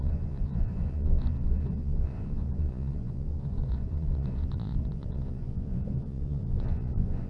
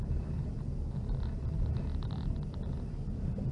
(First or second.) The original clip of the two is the second